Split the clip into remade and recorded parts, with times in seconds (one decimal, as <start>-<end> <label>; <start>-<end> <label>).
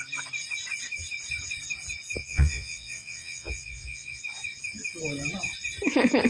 0.0-2.2 recorded; 2.2-4.2 remade; 4.2-6.3 recorded